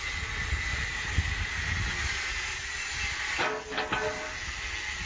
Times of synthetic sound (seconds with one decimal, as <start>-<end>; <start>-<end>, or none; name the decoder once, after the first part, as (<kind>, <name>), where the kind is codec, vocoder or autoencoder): 0.7-3.4 (vocoder, BigVGAN v2)